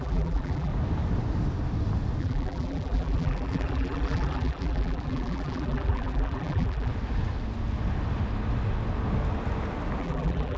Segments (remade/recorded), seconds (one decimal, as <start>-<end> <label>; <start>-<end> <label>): 0.0-0.7 remade; 0.7-2.2 recorded; 2.2-6.9 remade; 6.9-10.0 recorded; 10.0-10.6 remade

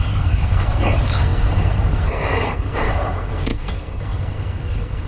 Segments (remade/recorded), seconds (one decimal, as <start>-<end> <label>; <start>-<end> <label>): 0.0-5.1 remade

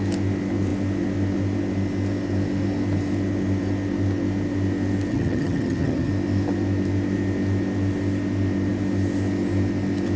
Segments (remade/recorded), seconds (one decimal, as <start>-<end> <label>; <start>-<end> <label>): 0.0-5.1 recorded; 5.1-6.1 remade; 6.1-10.2 recorded

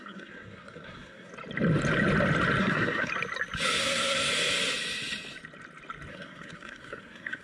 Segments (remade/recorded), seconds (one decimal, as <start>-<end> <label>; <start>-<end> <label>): 0.0-1.3 remade; 1.3-2.6 recorded; 2.6-3.1 remade; 3.1-3.8 recorded; 3.8-4.3 remade; 4.3-6.1 recorded; 6.1-7.4 remade